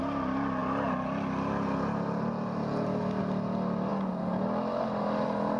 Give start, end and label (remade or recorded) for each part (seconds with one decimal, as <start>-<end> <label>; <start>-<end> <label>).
0.0-5.6 recorded